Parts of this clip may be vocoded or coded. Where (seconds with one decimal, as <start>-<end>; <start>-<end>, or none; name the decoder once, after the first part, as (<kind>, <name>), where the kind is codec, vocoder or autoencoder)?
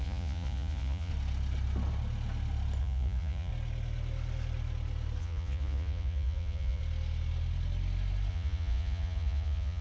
0.0-1.1 (vocoder, Vocos); 2.8-3.5; 5.2-6.8; 8.3-9.8